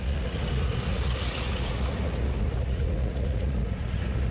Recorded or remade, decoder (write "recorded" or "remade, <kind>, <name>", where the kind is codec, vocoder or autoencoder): remade, vocoder, Vocos